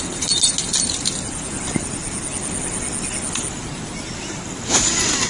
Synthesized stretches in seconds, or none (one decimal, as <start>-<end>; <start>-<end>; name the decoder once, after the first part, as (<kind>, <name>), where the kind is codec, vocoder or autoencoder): none